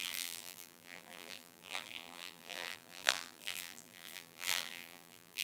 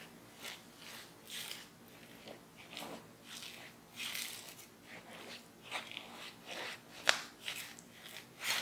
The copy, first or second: first